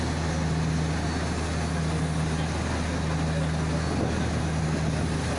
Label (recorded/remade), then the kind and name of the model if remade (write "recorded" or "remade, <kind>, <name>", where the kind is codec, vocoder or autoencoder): recorded